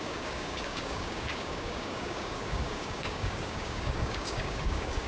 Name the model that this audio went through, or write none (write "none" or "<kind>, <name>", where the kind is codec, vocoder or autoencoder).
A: codec, DAC